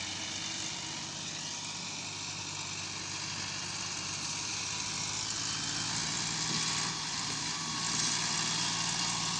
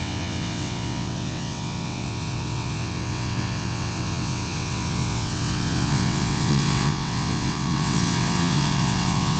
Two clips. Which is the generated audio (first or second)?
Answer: second